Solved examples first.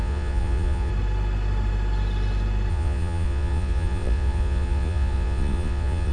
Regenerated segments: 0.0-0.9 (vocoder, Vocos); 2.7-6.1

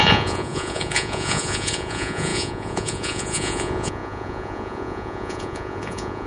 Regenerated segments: 0.0-6.3 (vocoder, Vocos)

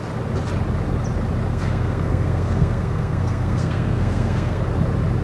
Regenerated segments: 1.5-4.6 (codec, SNAC)

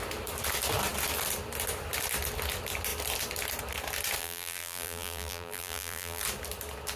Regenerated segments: 4.2-6.2 (vocoder, BigVGAN v2)

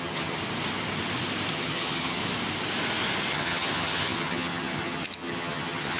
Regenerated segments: 0.0-0.4 (vocoder, HiFi-GAN); 1.5-2.2; 3.3-6.0

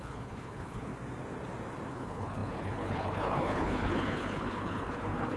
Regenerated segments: 0.0-0.9 (codec, HILCodec); 1.9-5.4

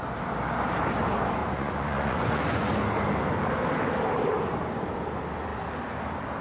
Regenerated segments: 1.4-2.7 (vocoder, Vocos)